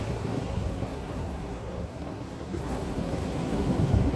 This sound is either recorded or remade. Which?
remade